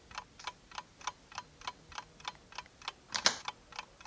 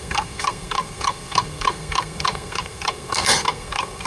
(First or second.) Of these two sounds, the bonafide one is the first